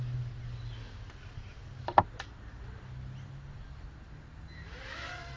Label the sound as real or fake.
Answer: real